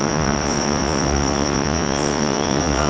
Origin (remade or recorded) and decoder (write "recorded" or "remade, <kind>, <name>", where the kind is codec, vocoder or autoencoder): remade, vocoder, WaveNeXt